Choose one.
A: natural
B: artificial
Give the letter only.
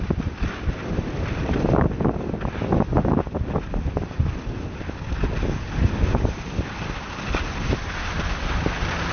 A